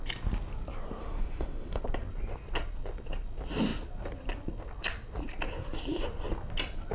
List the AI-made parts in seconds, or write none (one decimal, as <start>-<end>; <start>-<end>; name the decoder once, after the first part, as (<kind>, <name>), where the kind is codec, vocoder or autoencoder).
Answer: 1.0-1.8 (autoencoder, DAC-VAE)